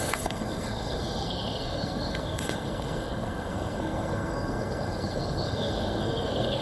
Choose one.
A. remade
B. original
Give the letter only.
A